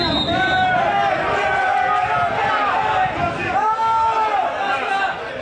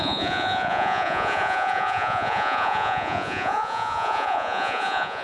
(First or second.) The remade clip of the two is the second